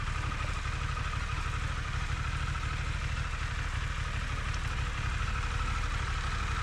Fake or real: real